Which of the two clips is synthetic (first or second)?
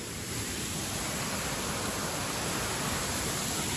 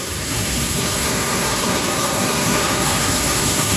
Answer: second